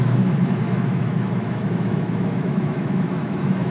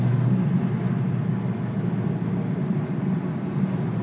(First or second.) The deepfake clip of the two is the first